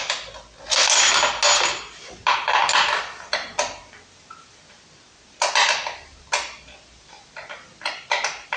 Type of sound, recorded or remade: recorded